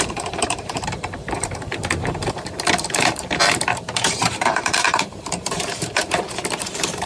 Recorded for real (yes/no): no